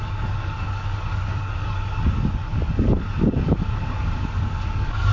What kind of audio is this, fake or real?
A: fake